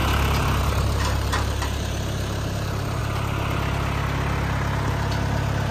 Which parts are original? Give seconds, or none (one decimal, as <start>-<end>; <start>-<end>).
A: 0.0-0.6; 3.0-5.7